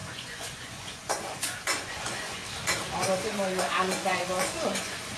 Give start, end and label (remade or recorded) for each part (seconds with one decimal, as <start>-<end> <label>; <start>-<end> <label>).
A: 0.0-2.4 remade; 2.4-3.0 recorded; 3.0-5.2 remade